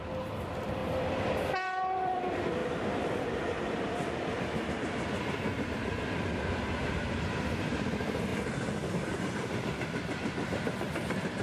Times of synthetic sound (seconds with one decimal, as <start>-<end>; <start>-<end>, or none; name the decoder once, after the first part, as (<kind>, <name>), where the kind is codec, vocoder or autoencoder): 0.8-2.2 (vocoder, BigVGAN v2); 2.6-3.8